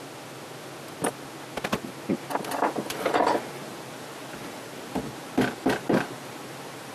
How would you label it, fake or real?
real